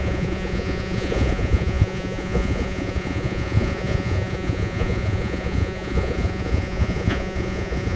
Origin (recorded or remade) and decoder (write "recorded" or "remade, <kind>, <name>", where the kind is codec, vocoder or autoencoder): remade, vocoder, Vocos